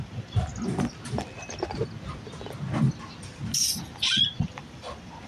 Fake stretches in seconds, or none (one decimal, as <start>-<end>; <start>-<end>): 0.0-0.5; 3.7-5.3